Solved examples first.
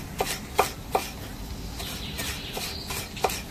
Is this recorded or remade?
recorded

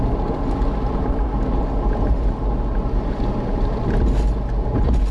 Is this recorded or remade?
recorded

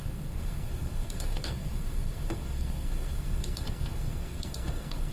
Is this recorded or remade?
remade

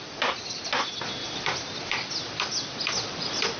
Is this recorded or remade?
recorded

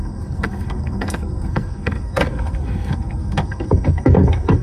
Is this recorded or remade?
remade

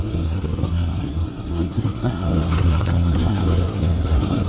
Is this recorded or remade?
remade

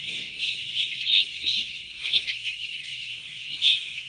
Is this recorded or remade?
remade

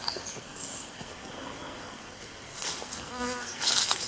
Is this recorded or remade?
remade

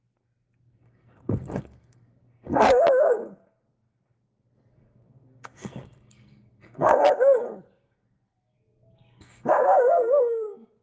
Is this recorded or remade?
remade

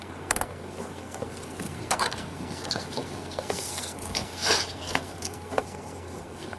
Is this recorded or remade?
remade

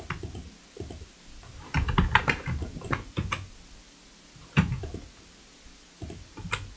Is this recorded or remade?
recorded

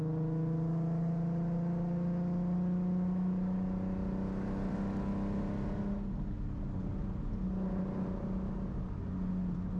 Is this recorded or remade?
recorded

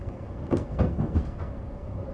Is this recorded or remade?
remade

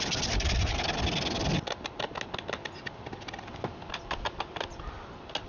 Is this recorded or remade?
recorded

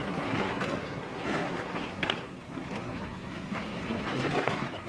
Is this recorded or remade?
remade